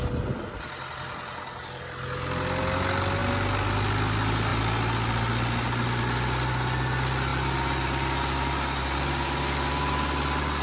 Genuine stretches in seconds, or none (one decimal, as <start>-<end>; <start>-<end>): 0.0-10.6